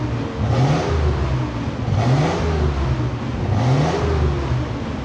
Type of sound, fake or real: real